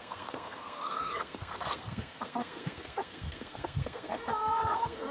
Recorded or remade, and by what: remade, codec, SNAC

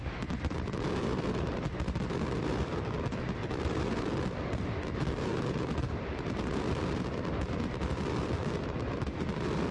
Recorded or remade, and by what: remade, vocoder, BigVGAN v2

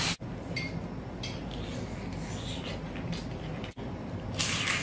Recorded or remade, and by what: recorded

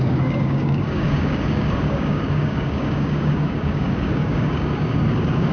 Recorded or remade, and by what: remade, codec, DAC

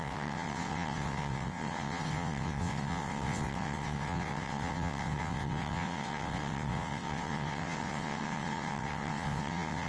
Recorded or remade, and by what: remade, vocoder, WaveNeXt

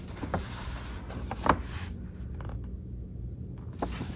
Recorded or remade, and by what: recorded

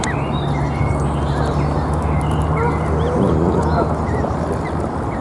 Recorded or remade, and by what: recorded